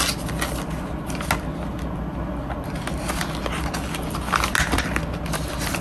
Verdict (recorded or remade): recorded